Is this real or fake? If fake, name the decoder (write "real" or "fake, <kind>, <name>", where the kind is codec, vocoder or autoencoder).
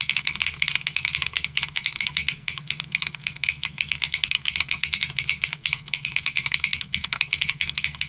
fake, codec, SNAC